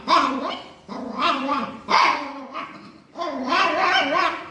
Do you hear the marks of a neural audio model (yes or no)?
yes